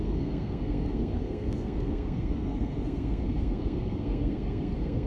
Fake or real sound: fake